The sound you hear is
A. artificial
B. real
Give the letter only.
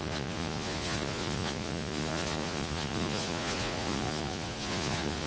A